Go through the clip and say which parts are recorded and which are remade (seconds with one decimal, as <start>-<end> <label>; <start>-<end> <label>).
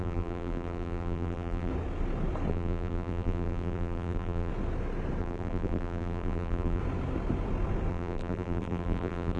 0.0-1.7 remade; 1.7-2.5 recorded; 2.5-4.5 remade; 4.5-5.2 recorded; 5.2-6.8 remade; 6.8-7.9 recorded; 7.9-9.4 remade